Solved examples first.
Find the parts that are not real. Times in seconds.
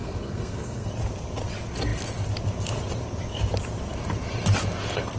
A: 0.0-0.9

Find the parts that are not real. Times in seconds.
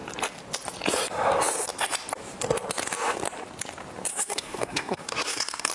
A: 4.1-5.7